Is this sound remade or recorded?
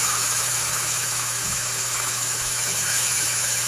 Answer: remade